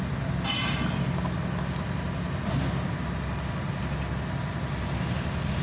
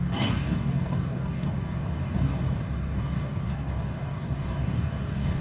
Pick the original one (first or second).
first